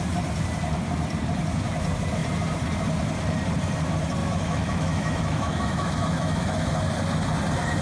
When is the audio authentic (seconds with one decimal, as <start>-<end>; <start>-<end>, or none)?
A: 0.0-4.2; 6.7-7.8